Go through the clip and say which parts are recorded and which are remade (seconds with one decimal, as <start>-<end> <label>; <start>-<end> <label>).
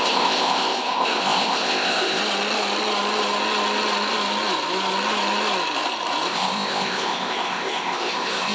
0.0-2.2 remade; 2.2-6.3 recorded; 6.3-8.5 remade